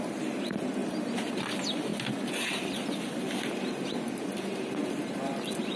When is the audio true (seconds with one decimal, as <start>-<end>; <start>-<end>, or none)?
0.0-5.8